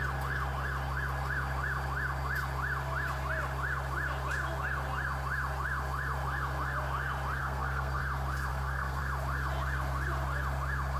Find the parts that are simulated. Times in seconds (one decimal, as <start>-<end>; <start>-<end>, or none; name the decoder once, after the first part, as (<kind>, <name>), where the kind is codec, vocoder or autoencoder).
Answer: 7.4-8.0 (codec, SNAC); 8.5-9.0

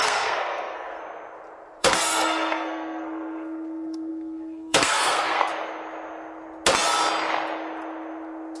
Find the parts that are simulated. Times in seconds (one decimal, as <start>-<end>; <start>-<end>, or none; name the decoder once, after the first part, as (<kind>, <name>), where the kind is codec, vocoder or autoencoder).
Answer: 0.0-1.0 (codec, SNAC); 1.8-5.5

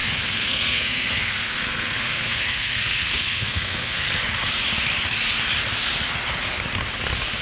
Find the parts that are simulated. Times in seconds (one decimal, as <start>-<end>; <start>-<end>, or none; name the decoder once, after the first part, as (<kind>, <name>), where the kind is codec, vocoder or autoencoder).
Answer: 0.0-4.1 (codec, SNAC)

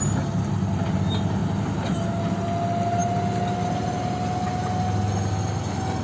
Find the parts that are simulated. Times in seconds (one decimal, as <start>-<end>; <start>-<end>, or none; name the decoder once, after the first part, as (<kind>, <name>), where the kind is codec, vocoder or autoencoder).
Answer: none

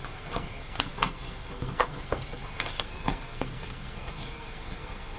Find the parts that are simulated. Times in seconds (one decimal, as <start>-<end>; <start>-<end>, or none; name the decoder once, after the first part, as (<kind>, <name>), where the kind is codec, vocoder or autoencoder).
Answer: 0.0-5.2 (codec, SNAC)

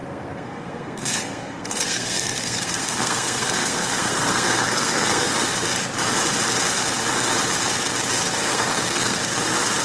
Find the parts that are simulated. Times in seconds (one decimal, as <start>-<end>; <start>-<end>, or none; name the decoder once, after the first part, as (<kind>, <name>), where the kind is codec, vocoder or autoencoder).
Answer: 0.0-5.3 (codec, SNAC); 8.4-9.2